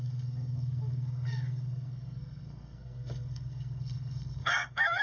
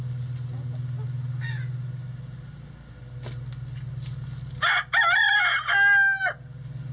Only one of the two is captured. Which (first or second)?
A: second